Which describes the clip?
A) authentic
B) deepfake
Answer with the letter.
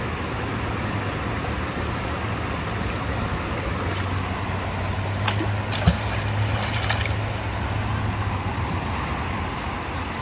A